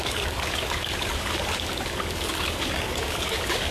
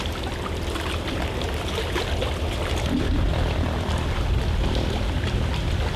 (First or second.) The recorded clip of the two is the second